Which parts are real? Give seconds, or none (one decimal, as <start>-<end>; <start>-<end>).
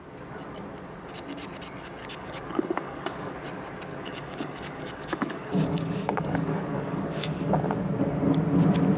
0.0-2.0; 3.3-3.9; 7.4-9.0